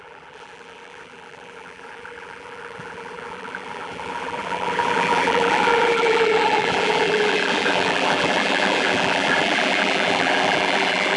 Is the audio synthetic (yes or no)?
yes